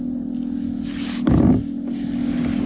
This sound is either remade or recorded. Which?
recorded